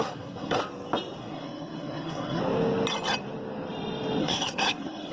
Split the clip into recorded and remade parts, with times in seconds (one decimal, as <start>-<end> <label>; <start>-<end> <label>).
0.0-0.6 remade; 0.6-1.2 recorded; 1.2-2.4 remade; 2.4-4.2 recorded; 4.2-5.1 remade